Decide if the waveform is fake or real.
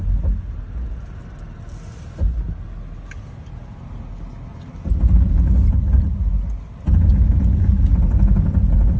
real